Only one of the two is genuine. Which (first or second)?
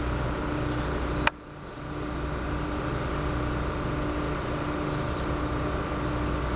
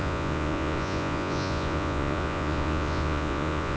first